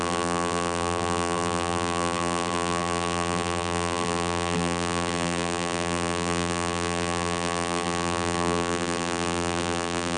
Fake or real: fake